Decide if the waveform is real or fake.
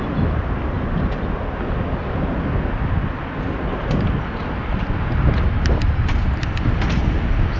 real